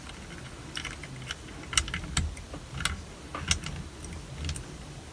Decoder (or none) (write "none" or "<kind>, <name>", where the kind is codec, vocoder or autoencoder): none